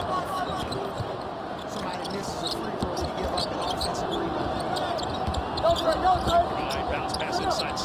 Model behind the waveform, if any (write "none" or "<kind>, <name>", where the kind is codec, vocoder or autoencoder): none